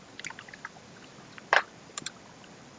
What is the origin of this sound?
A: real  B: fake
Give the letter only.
A